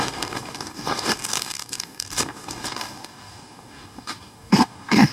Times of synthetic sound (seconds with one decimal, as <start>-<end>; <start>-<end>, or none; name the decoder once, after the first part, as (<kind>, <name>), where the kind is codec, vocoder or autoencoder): 0.0-5.1 (codec, DAC)